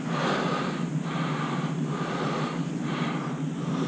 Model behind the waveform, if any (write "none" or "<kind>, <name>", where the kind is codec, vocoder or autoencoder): none